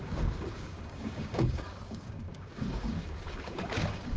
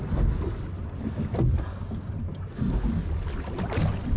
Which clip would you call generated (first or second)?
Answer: first